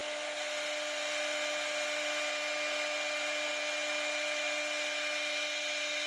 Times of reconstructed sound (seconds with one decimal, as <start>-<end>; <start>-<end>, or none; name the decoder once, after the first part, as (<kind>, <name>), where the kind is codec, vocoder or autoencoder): none